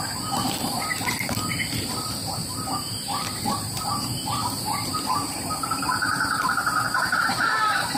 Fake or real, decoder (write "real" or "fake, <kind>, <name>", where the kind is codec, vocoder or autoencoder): fake, vocoder, BigVGAN v2